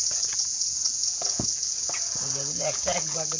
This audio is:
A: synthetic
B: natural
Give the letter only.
A